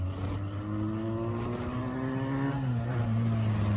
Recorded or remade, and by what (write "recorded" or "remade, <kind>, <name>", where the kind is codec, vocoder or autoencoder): recorded